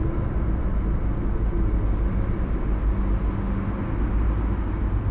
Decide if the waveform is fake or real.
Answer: real